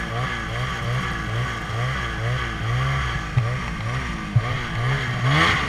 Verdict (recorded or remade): recorded